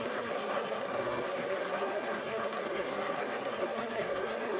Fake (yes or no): yes